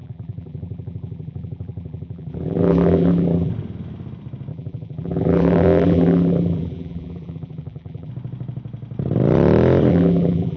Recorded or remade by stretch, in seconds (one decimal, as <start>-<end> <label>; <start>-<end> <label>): 0.0-3.5 remade; 3.5-4.5 recorded; 4.5-8.1 remade; 8.1-9.9 recorded; 9.9-10.6 remade